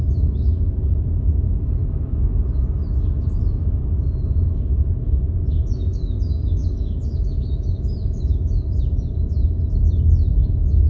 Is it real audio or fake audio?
fake